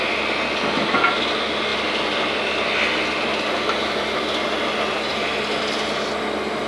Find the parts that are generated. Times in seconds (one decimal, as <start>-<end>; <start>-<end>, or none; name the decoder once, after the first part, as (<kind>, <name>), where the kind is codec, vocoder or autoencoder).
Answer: 1.7-4.0 (vocoder, BigVGAN v2); 5.1-5.6